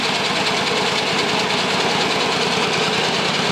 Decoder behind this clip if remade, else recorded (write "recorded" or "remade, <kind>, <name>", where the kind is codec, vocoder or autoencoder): recorded